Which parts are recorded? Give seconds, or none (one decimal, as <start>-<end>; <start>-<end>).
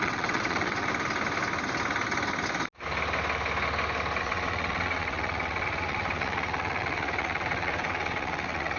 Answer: 0.9-4.2